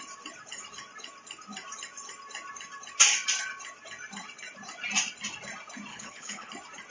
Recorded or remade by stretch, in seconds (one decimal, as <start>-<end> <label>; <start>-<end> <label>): 0.0-5.9 recorded; 5.9-6.5 remade; 6.5-6.9 recorded